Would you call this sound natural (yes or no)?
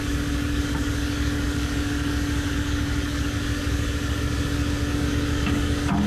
no